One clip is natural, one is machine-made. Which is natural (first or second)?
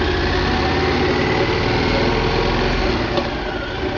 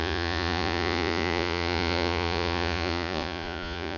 first